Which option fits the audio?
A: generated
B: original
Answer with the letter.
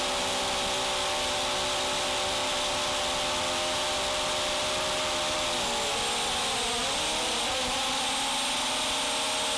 B